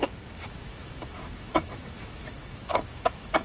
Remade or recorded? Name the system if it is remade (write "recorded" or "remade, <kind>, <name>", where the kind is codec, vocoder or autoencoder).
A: remade, autoencoder, DAC-VAE